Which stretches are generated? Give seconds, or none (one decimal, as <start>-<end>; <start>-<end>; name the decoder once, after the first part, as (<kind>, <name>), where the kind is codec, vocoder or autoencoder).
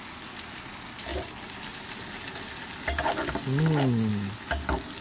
none